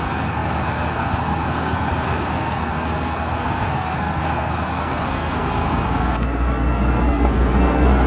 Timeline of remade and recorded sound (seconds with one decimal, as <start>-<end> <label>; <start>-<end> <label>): 0.0-8.1 remade